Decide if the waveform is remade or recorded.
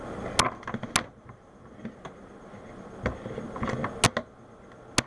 recorded